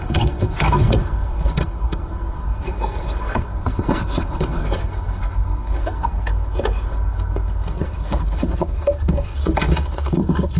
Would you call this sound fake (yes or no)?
yes